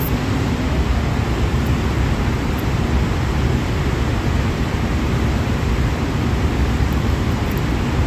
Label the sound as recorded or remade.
recorded